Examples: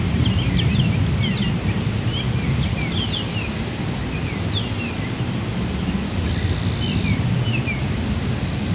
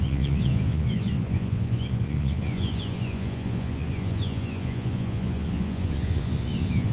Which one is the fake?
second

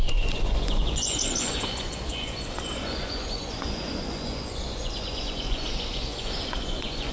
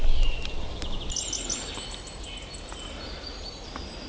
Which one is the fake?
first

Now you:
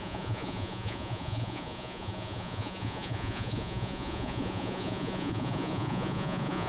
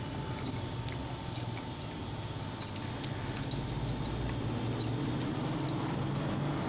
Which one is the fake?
first